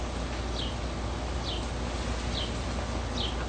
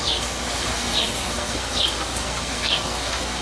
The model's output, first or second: second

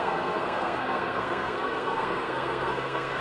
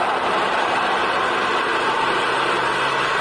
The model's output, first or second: first